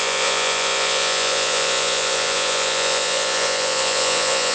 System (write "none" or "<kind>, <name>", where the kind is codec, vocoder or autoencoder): vocoder, Vocos